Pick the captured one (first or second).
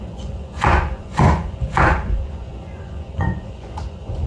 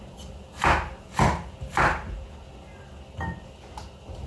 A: second